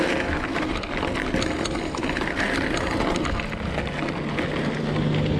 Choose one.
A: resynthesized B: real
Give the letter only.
B